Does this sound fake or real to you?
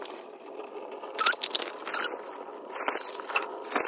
real